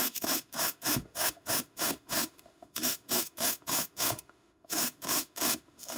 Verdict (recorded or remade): remade